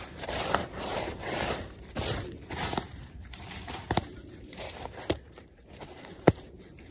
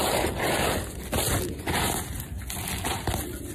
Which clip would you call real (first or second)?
second